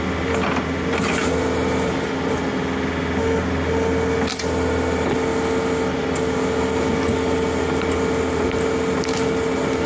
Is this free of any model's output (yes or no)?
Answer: yes